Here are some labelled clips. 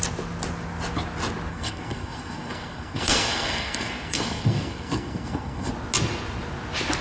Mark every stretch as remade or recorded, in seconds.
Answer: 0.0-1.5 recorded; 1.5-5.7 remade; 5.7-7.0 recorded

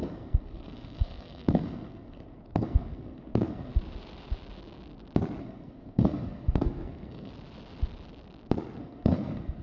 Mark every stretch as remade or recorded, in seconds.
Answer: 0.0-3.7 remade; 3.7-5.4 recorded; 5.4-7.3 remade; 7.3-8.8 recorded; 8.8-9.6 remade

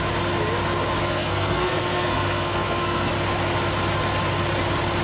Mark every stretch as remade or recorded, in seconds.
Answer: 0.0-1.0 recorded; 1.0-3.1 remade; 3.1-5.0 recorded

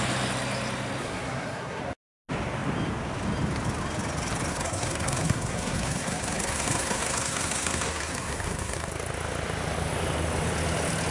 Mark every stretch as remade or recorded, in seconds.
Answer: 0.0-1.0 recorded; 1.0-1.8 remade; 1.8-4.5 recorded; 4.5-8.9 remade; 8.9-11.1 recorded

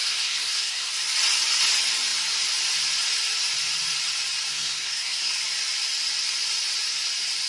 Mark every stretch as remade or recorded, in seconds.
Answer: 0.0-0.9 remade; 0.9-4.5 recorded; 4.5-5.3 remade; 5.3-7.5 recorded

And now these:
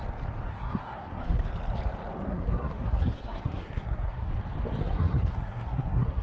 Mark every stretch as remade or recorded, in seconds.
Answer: 0.0-0.5 recorded; 0.5-1.4 remade; 1.4-2.3 recorded; 2.3-4.3 remade; 4.3-4.8 recorded; 4.8-6.2 remade

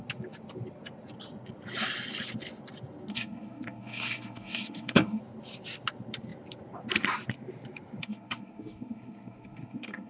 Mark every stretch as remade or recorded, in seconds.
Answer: 0.0-3.1 recorded; 3.1-5.2 remade; 5.2-8.0 recorded; 8.0-10.1 remade

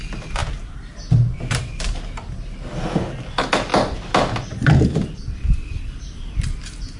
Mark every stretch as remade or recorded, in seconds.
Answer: 0.0-7.0 recorded